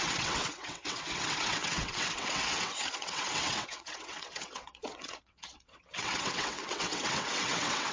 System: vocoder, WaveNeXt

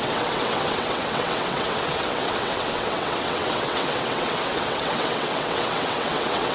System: vocoder, WaveNeXt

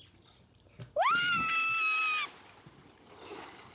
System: none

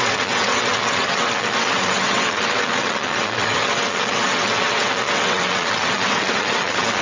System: vocoder, WaveNeXt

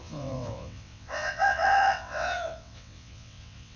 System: vocoder, WaveNeXt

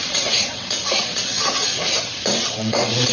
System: vocoder, WaveNeXt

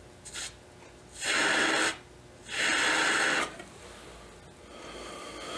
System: none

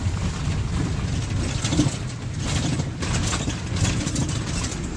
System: none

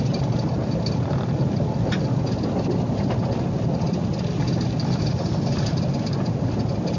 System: none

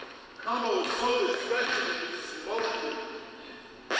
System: none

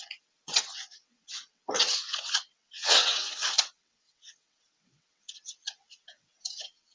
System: vocoder, WaveNeXt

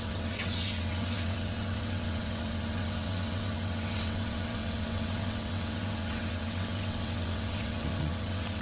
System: vocoder, WaveNeXt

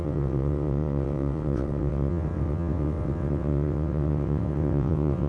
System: vocoder, WaveNeXt